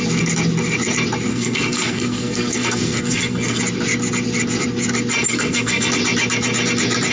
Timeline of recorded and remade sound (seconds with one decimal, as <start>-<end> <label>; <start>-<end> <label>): 0.0-1.3 recorded; 1.3-3.6 remade; 3.6-5.3 recorded; 5.3-5.9 remade; 5.9-7.1 recorded